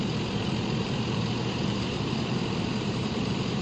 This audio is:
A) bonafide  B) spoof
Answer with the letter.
B